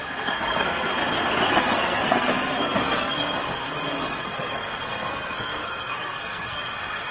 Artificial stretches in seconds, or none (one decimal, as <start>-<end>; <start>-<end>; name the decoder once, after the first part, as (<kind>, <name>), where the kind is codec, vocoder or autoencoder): 0.0-0.9 (codec, SNAC); 1.5-7.1